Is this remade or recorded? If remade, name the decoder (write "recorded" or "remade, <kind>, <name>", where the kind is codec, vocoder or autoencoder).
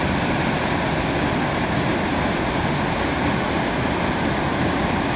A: recorded